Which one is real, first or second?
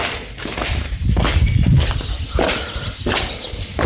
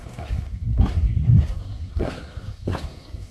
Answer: first